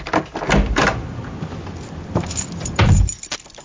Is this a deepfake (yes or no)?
no